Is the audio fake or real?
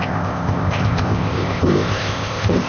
fake